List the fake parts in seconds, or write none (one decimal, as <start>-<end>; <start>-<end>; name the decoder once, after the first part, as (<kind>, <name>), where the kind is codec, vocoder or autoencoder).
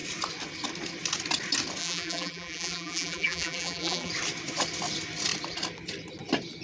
1.8-4.1 (vocoder, BigVGAN v2)